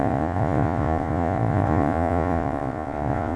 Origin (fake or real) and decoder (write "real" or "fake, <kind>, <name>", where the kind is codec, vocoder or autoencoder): fake, vocoder, Vocos